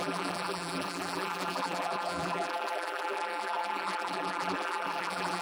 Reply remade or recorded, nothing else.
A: remade